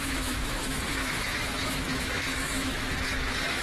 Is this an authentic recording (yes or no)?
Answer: no